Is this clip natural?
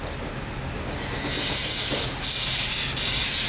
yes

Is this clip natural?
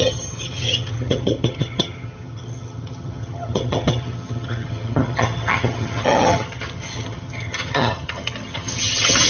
no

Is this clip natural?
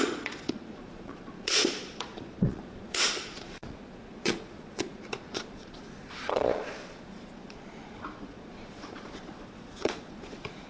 no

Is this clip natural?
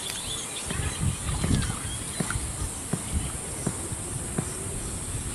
yes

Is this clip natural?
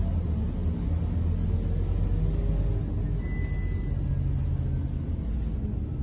yes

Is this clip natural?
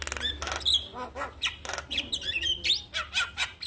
yes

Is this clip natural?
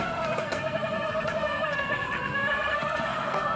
no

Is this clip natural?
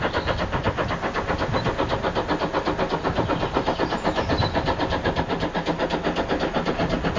yes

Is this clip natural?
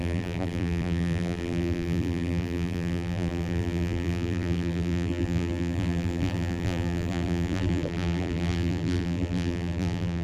no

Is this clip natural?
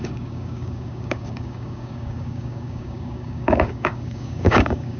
no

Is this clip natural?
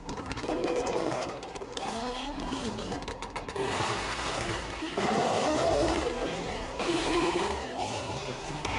no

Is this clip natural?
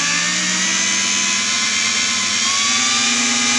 yes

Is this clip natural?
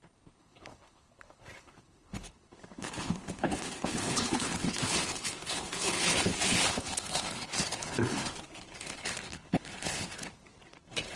no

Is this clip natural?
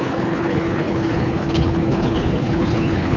no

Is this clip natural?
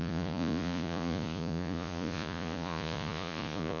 no